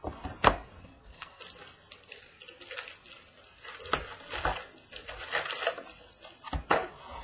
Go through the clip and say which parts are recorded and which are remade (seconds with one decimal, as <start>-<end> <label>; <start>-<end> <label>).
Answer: 0.0-0.8 recorded; 0.8-1.4 remade; 1.4-7.2 recorded